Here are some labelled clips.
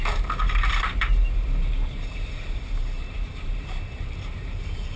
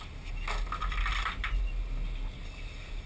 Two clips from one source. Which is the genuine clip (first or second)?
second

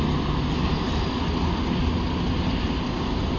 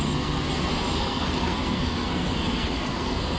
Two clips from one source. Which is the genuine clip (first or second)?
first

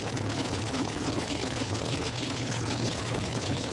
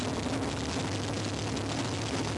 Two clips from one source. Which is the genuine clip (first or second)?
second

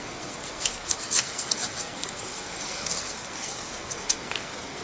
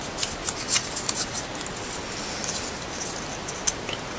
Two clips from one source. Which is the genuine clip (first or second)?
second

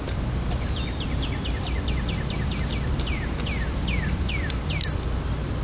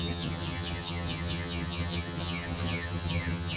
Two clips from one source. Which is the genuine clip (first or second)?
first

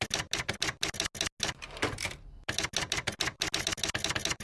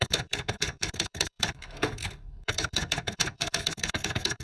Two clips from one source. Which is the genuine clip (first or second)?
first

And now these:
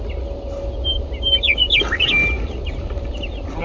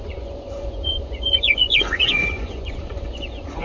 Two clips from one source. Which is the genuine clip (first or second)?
first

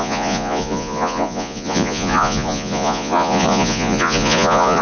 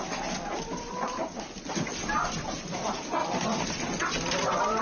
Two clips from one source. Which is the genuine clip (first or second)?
second